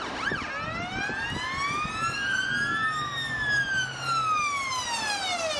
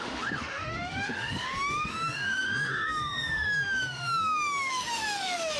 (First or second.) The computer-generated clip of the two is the second